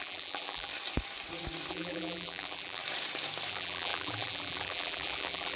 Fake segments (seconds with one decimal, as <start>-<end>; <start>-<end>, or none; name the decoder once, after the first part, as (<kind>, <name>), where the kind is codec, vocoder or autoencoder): 0.0-0.7 (vocoder, BigVGAN v2); 1.7-2.8; 3.5-5.6